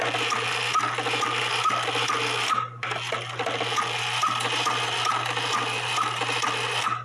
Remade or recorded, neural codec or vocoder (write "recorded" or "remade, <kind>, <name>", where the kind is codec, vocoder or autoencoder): recorded